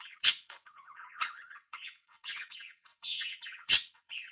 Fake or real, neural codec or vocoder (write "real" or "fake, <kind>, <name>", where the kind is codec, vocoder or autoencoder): fake, vocoder, WaveNeXt